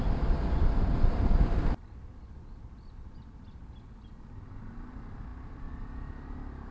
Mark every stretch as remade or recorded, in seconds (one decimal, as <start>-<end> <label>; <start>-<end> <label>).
0.0-6.7 recorded